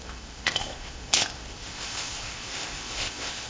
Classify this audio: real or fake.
fake